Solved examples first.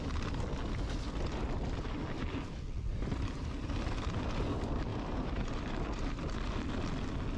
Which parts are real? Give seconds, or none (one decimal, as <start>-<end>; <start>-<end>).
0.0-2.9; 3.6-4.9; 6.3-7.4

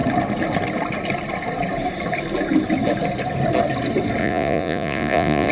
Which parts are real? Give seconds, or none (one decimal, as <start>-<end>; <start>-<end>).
0.0-4.2

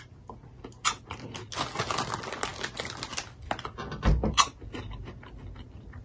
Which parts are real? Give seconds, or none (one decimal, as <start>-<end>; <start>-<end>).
0.0-6.0